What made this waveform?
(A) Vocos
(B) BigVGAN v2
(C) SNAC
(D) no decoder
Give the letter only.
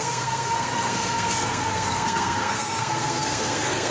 C